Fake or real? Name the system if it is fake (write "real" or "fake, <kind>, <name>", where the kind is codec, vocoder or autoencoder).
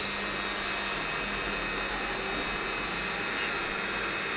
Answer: real